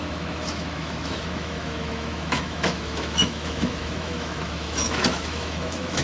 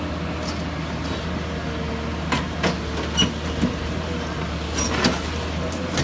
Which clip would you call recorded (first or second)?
second